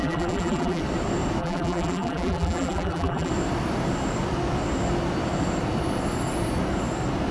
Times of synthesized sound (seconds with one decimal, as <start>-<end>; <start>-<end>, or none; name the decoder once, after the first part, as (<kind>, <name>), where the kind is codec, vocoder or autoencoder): 0.0-0.8 (vocoder, BigVGAN v2); 1.4-3.3